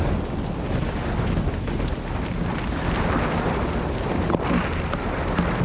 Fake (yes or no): no